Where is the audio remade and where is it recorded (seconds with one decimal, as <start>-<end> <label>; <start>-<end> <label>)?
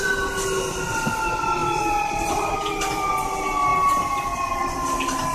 0.0-1.6 recorded; 1.6-2.4 remade; 2.4-5.3 recorded